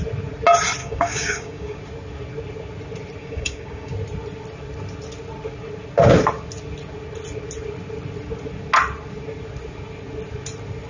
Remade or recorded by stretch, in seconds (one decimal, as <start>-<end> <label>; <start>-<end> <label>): 0.0-0.8 recorded; 0.8-1.8 remade; 1.8-3.2 recorded; 3.2-3.9 remade; 3.9-10.9 recorded